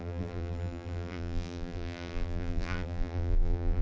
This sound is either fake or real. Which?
fake